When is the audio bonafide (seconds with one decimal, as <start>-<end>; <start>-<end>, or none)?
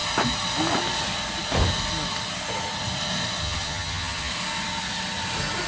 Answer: 0.0-3.4; 4.3-5.7